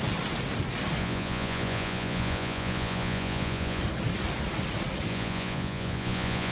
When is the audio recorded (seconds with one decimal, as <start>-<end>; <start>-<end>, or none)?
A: 0.0-1.0; 3.8-5.1